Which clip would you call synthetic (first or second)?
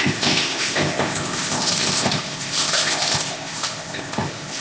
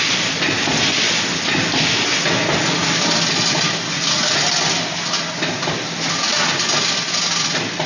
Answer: first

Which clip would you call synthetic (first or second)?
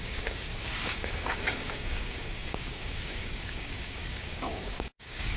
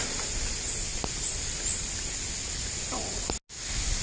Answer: first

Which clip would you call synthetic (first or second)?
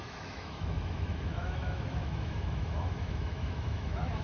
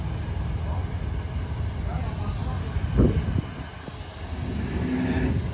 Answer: first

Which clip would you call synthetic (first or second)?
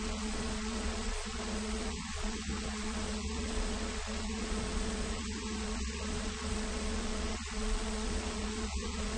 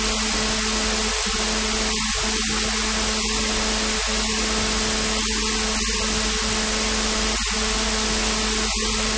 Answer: first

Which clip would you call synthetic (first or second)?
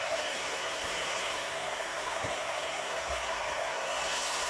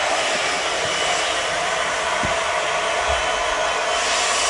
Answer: first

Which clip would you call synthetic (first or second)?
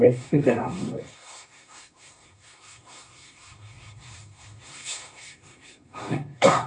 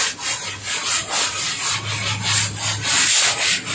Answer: first